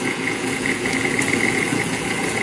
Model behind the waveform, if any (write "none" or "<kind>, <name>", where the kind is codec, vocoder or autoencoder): vocoder, Vocos